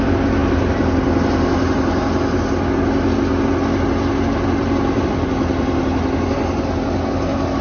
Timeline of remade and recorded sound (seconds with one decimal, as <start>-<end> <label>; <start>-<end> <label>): 0.0-7.6 recorded